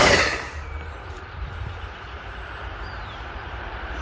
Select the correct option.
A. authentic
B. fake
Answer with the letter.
B